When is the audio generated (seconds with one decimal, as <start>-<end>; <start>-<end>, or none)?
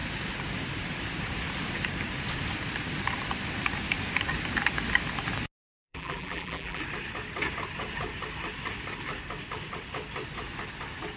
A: 5.7-6.8